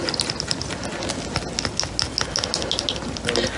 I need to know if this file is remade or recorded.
recorded